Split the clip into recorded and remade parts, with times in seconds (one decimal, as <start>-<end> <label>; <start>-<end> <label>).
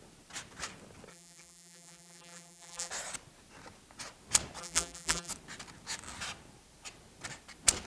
0.0-1.1 recorded; 1.1-2.9 remade; 2.9-4.6 recorded; 4.6-5.3 remade; 5.3-7.9 recorded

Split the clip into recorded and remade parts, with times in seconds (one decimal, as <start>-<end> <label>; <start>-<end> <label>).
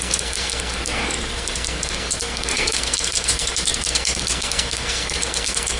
0.0-5.8 remade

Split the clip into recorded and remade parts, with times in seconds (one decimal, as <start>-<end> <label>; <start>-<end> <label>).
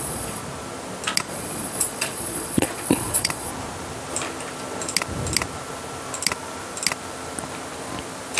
0.0-0.4 remade; 0.4-1.2 recorded; 1.2-3.5 remade; 3.5-8.4 recorded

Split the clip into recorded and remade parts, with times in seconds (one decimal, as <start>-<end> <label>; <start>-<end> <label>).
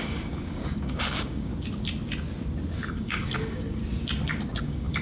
0.0-1.5 remade; 1.5-2.9 recorded; 2.9-3.8 remade; 3.8-4.6 recorded; 4.6-5.0 remade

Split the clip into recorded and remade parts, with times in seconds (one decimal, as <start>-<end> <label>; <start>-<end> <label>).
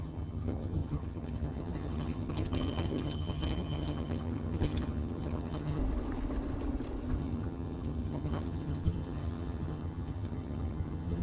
0.0-5.8 remade; 5.8-7.2 recorded; 7.2-11.2 remade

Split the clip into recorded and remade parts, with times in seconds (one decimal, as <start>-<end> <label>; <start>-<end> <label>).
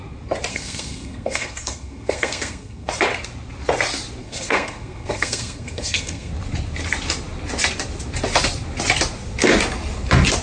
0.0-0.5 recorded; 0.5-2.9 remade; 2.9-4.2 recorded; 4.2-6.3 remade; 6.3-10.4 recorded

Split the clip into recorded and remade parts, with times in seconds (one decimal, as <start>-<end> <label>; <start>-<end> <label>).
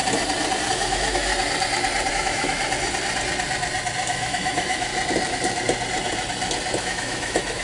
0.0-0.7 recorded; 0.7-1.3 remade; 1.3-2.1 recorded; 2.1-2.6 remade; 2.6-4.1 recorded; 4.1-4.9 remade; 4.9-6.8 recorded; 6.8-7.6 remade